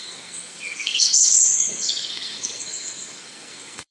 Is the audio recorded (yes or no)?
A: no